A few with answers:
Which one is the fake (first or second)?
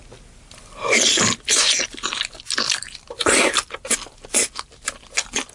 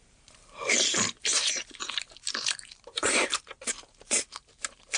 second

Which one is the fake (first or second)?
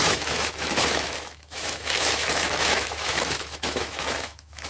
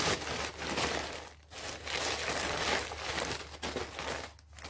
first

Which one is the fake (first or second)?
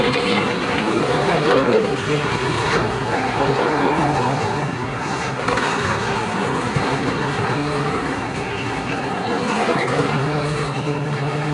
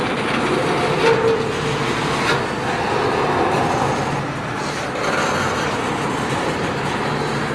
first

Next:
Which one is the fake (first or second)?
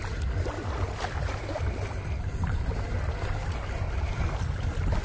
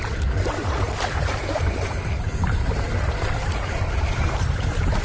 second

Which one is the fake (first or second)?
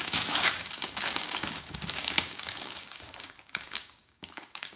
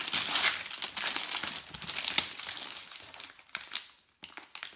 first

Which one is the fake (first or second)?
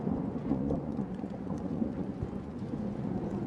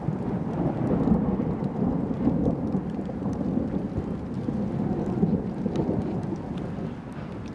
first